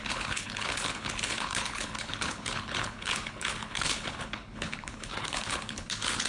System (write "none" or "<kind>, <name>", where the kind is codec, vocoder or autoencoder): codec, HILCodec